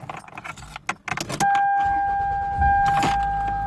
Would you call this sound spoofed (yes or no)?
no